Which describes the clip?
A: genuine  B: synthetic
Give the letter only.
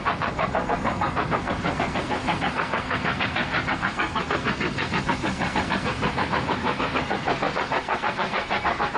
B